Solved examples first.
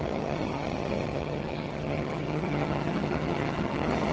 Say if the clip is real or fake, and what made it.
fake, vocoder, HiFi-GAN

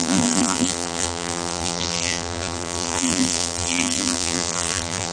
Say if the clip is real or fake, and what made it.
fake, vocoder, BigVGAN v2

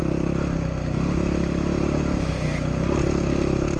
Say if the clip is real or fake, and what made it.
real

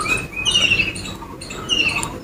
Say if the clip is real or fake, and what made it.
real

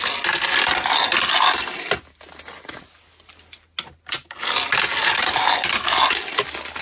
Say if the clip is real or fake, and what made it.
real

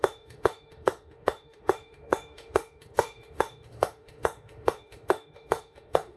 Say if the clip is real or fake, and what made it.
fake, autoencoder, DAC-VAE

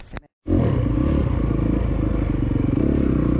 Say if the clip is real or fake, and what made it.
real